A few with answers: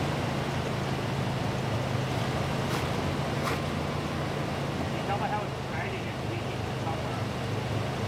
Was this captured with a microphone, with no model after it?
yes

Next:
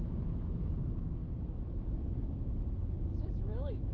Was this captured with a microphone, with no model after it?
no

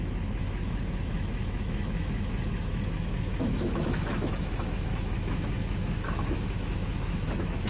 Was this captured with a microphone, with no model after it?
no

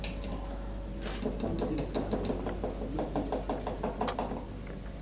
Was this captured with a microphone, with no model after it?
yes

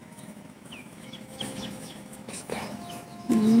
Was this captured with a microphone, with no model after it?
no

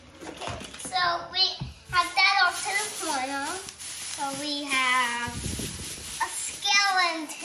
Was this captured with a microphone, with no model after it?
yes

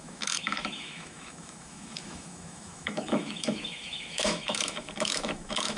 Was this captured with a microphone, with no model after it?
no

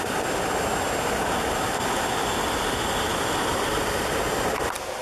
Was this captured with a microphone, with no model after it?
yes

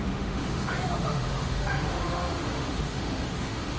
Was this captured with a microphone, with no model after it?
no